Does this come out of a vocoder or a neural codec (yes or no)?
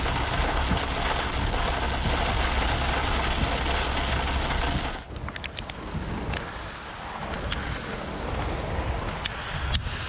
no